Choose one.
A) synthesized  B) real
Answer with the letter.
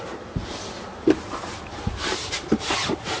A